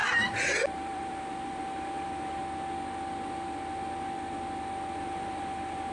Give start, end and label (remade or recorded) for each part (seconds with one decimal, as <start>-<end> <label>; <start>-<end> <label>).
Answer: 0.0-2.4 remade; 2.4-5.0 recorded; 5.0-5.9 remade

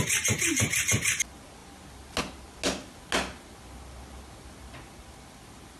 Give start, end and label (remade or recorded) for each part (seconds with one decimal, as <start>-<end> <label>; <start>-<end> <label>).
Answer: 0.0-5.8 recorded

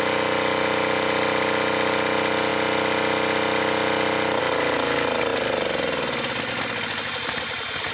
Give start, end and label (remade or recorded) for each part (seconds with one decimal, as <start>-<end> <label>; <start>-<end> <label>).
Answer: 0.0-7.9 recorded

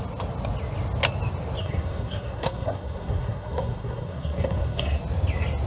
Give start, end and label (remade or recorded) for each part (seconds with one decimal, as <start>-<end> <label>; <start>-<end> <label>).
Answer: 0.0-1.6 recorded; 1.6-5.0 remade; 5.0-5.7 recorded

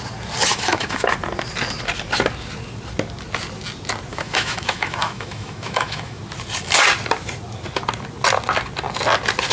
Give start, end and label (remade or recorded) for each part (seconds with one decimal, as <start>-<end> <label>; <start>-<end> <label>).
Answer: 0.0-0.5 recorded; 0.5-1.1 remade; 1.1-4.1 recorded; 4.1-6.2 remade; 6.2-9.5 recorded

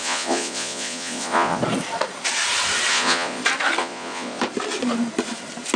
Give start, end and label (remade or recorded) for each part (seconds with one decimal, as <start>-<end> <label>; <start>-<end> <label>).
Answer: 0.0-1.6 remade; 1.6-2.9 recorded; 2.9-3.4 remade; 3.4-3.8 recorded; 3.8-4.4 remade; 4.4-5.8 recorded